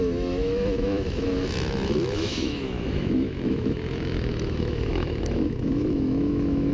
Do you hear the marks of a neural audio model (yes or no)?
yes